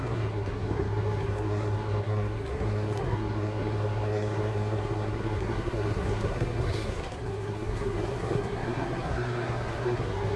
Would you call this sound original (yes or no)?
no